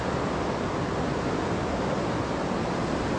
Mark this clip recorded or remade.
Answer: recorded